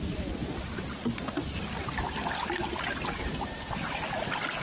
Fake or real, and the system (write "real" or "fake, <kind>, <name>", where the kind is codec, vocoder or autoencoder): real